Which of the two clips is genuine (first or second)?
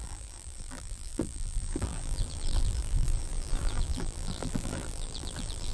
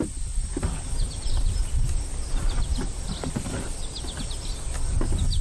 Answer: second